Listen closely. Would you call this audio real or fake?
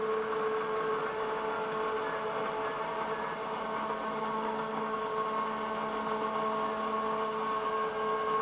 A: real